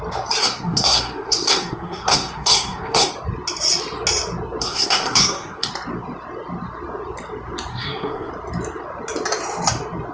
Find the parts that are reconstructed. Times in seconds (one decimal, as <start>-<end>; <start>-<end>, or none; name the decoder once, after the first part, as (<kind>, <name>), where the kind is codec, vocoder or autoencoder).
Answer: 0.4-3.1 (codec, SNAC); 4.6-5.7; 7.7-8.3